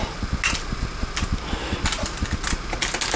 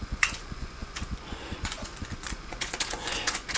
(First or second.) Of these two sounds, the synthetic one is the second